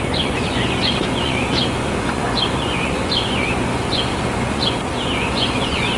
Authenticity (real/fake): fake